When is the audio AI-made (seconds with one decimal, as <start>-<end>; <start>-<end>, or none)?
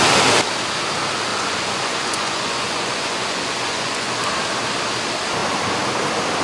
1.3-4.1